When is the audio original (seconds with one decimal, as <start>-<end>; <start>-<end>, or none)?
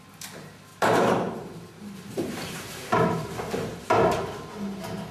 0.0-0.7; 3.8-5.1